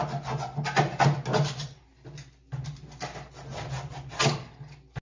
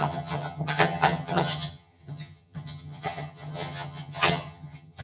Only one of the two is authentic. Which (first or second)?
first